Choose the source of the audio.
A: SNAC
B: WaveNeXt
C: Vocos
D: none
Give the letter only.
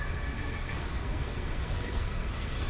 A